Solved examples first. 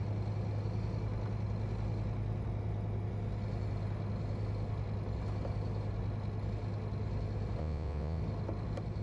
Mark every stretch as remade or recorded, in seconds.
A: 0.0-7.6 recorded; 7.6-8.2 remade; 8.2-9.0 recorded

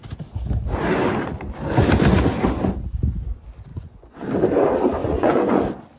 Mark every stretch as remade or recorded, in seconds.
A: 0.0-3.7 recorded; 3.7-4.3 remade; 4.3-5.0 recorded; 5.0-5.6 remade; 5.6-6.0 recorded

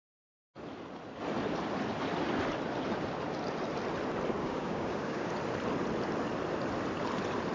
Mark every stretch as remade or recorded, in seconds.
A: 0.0-4.4 recorded; 4.4-5.3 remade; 5.3-7.5 recorded

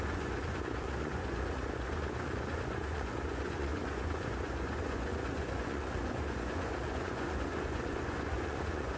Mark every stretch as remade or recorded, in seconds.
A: 0.0-9.0 remade

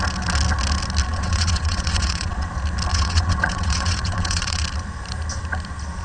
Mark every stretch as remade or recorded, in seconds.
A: 0.0-1.1 recorded; 1.1-2.5 remade; 2.5-2.9 recorded; 2.9-4.6 remade; 4.6-6.0 recorded

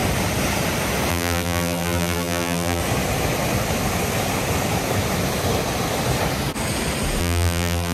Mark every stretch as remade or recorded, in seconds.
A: 0.0-1.1 recorded; 1.1-2.8 remade; 2.8-7.2 recorded; 7.2-7.9 remade

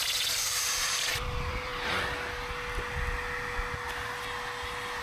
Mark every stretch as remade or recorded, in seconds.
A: 0.0-1.7 remade; 1.7-5.0 recorded